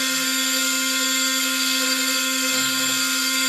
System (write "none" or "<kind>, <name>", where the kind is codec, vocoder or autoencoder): codec, SNAC